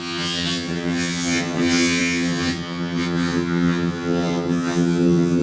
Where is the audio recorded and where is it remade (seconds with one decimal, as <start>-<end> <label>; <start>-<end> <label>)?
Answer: 0.0-5.4 remade